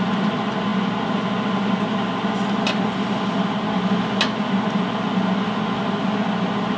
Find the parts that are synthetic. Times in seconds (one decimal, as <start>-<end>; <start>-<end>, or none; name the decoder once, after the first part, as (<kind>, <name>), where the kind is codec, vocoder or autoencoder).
none